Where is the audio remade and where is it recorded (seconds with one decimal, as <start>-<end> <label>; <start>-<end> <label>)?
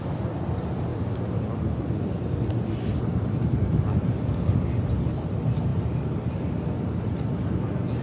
0.0-8.0 recorded